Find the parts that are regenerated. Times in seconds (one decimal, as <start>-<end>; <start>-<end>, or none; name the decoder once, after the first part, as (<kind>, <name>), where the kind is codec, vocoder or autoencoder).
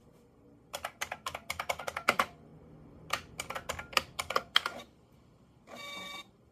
none